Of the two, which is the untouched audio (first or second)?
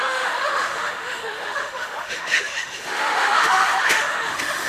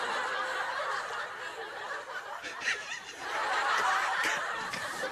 second